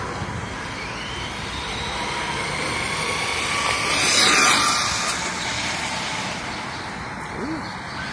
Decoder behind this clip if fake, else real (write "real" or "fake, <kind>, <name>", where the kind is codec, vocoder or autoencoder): real